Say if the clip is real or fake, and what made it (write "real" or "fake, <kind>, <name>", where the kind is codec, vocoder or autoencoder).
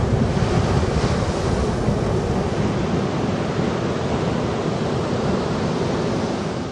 real